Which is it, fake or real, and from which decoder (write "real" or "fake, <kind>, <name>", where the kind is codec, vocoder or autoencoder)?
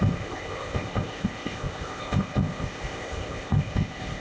fake, codec, ZipCodec